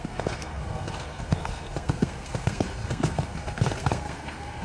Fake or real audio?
fake